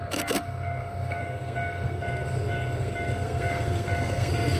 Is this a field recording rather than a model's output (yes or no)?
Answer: no